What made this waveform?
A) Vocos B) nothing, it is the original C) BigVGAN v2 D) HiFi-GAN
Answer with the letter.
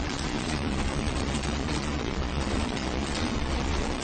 A